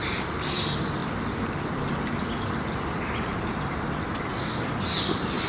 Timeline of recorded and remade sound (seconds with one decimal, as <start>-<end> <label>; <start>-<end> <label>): 0.0-5.5 recorded